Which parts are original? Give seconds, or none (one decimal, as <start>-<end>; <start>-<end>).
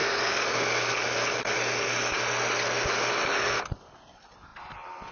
0.0-5.1